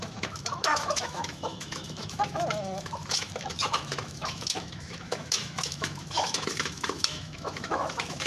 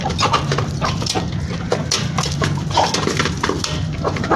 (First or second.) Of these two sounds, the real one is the second